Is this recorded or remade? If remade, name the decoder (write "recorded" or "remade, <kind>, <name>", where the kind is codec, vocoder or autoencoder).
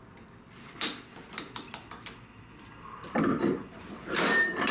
remade, vocoder, BigVGAN v2